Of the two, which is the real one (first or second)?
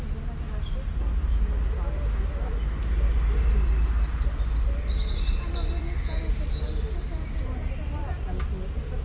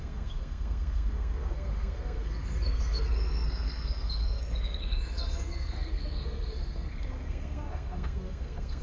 first